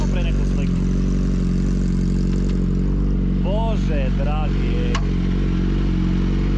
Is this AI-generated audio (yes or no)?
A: no